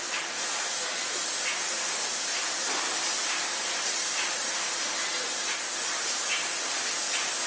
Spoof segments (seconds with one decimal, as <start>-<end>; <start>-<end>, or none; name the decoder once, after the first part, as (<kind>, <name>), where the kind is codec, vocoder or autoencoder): none